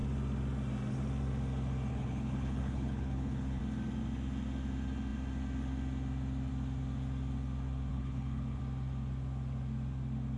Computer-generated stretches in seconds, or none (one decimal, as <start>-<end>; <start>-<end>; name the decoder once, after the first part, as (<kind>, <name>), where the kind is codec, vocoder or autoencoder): 1.9-3.6 (codec, HILCodec); 7.9-8.6